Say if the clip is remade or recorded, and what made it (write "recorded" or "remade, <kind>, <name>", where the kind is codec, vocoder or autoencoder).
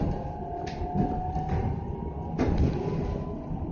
recorded